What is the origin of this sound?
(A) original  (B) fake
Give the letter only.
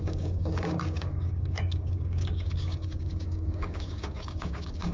B